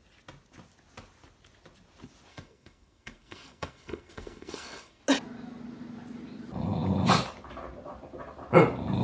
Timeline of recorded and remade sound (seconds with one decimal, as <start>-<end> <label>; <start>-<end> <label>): 0.0-2.3 recorded; 2.3-5.0 remade; 5.0-9.0 recorded